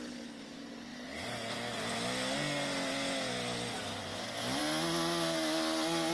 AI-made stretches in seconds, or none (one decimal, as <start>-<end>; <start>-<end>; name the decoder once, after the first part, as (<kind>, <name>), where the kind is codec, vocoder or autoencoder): none